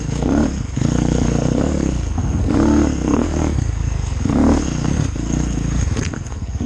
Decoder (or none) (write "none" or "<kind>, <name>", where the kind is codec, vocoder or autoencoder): codec, SNAC